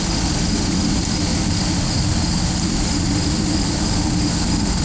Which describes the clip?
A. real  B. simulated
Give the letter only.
A